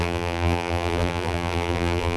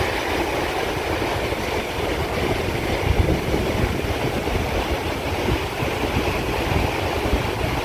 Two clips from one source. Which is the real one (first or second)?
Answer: second